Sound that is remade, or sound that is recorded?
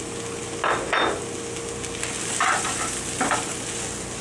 recorded